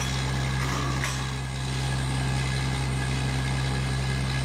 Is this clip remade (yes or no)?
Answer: no